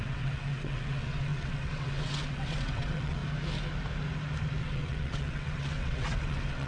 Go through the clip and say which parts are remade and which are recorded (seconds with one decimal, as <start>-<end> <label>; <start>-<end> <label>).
0.0-3.2 remade; 3.2-4.6 recorded; 4.6-6.7 remade